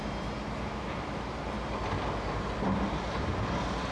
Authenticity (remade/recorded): recorded